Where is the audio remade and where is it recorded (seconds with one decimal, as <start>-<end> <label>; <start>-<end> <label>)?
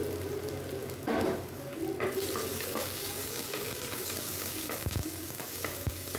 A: 0.0-0.8 recorded; 0.8-1.8 remade; 1.8-2.5 recorded; 2.5-6.2 remade